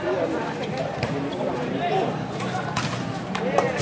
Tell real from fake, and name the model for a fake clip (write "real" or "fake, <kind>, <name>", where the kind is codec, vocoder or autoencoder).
fake, vocoder, BigVGAN v2